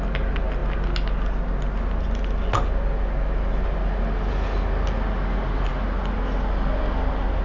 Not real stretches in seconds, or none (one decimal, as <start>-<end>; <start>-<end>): none